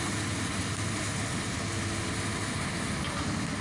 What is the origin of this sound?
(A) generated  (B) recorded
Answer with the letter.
B